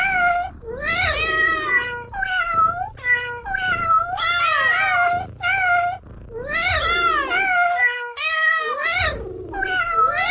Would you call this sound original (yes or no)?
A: yes